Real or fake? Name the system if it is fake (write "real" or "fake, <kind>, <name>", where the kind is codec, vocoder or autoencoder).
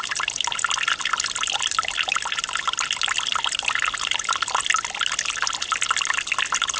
real